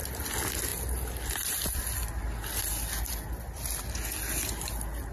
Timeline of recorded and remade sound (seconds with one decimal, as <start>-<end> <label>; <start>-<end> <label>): 0.0-5.1 recorded